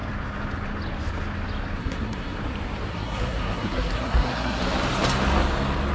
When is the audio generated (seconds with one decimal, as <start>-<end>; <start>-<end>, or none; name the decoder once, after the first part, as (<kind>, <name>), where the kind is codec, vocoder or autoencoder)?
1.8-2.4 (codec, SNAC); 2.9-4.6